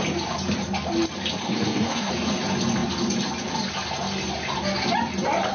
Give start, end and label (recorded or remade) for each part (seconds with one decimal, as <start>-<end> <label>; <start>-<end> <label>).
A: 0.0-1.4 recorded; 1.4-2.1 remade; 2.1-5.5 recorded